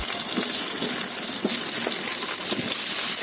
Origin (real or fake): real